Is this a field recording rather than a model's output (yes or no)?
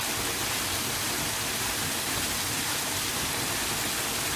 yes